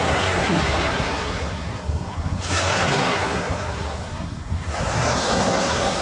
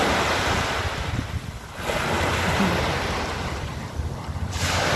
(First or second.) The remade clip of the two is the first